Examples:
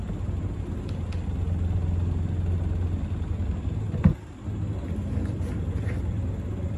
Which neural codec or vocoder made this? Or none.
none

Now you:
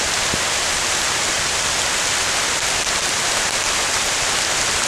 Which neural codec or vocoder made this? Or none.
none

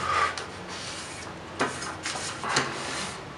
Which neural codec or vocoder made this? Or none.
none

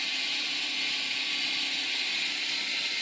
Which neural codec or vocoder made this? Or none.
none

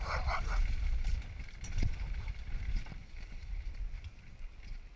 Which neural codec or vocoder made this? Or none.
vocoder, BigVGAN v2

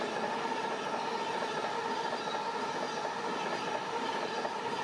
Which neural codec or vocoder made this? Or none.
none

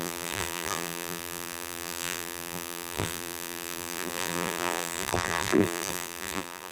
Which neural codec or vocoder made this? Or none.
vocoder, BigVGAN v2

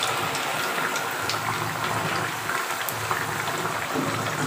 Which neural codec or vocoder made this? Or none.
none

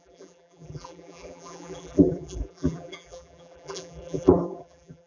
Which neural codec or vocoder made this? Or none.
vocoder, BigVGAN v2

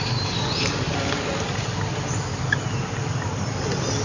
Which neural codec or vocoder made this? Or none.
none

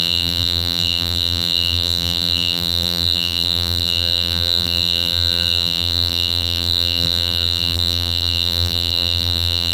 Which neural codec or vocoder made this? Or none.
vocoder, BigVGAN v2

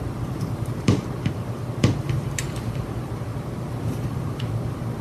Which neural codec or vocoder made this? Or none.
vocoder, BigVGAN v2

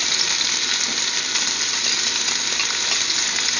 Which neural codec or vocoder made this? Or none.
none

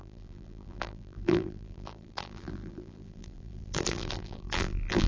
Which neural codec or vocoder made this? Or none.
vocoder, BigVGAN v2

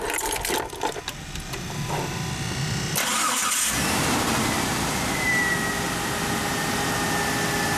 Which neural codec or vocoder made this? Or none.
none